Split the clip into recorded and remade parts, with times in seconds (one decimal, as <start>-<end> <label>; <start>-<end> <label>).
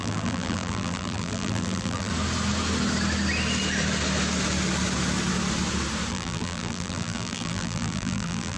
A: 0.0-2.1 remade; 2.1-6.1 recorded; 6.1-8.6 remade